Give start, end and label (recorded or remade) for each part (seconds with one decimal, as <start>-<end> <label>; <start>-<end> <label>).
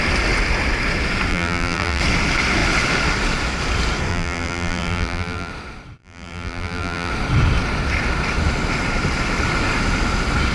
0.0-1.3 recorded; 1.3-2.0 remade; 2.0-4.1 recorded; 4.1-5.5 remade; 5.5-6.0 recorded; 6.0-7.1 remade; 7.1-10.5 recorded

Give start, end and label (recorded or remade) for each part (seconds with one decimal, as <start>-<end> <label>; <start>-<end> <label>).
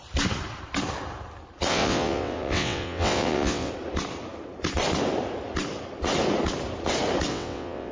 0.0-1.7 recorded; 1.7-3.7 remade; 3.7-7.3 recorded; 7.3-7.9 remade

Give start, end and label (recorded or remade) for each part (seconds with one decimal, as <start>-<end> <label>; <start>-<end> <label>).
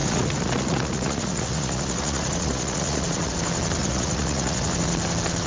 0.0-3.3 remade; 3.3-3.8 recorded; 3.8-4.7 remade; 4.7-5.5 recorded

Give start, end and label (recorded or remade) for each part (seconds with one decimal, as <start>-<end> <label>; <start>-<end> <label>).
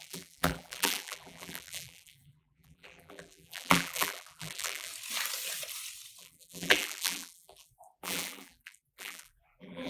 0.0-4.9 remade; 4.9-6.2 recorded; 6.2-9.9 remade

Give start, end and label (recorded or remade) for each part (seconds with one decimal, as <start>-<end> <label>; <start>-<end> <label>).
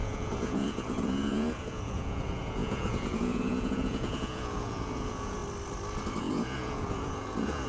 0.0-5.4 remade; 5.4-6.2 recorded; 6.2-7.7 remade